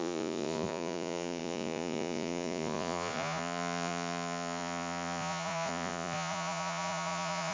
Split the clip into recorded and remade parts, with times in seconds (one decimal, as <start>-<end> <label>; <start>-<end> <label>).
0.0-7.5 remade